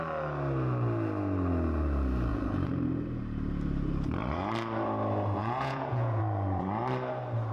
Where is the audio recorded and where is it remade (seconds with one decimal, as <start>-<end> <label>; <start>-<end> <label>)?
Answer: 0.0-2.3 recorded; 2.3-3.2 remade; 3.2-5.4 recorded; 5.4-6.2 remade; 6.2-7.5 recorded